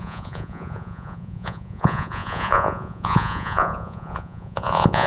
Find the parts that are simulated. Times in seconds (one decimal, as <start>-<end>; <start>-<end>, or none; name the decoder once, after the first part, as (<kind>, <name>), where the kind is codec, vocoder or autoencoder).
0.0-5.1 (vocoder, Vocos)